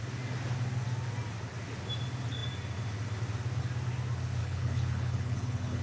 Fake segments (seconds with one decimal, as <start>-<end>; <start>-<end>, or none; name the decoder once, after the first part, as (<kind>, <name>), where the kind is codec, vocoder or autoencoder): 4.4-5.8 (codec, HILCodec)